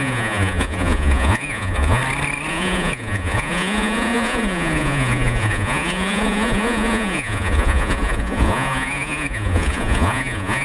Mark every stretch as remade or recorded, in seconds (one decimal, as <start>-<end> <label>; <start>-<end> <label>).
0.0-2.0 remade; 2.0-2.5 recorded; 2.5-10.6 remade